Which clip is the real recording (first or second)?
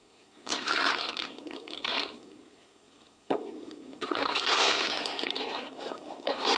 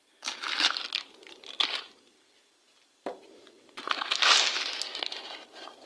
second